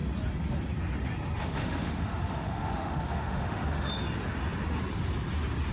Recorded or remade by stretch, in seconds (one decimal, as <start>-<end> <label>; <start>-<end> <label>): 0.0-1.4 recorded; 1.4-3.9 remade; 3.9-5.7 recorded